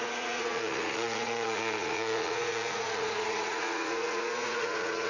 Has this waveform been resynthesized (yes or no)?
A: yes